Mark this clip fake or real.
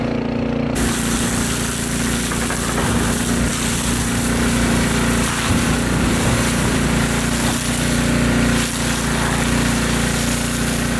real